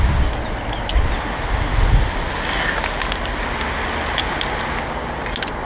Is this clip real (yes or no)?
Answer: yes